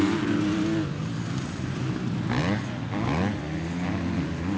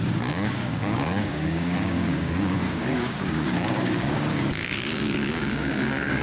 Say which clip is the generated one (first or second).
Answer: second